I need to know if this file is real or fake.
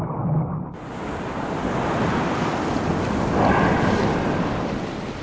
real